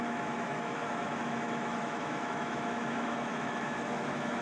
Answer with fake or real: fake